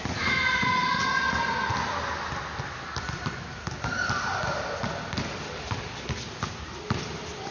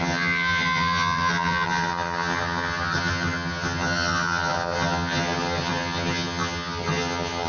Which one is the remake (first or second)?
second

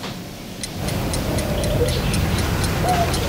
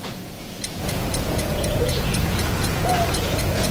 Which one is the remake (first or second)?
second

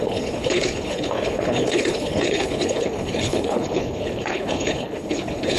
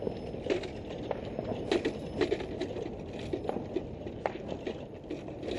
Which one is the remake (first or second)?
first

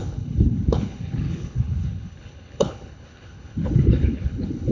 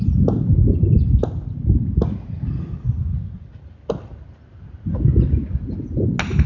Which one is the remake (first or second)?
first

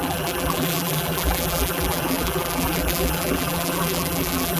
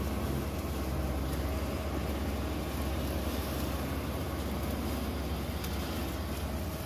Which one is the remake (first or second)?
first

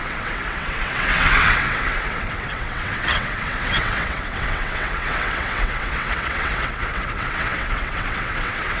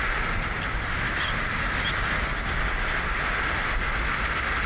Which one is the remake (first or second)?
first